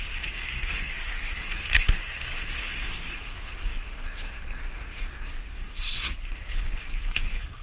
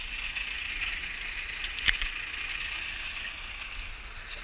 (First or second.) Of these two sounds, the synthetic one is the first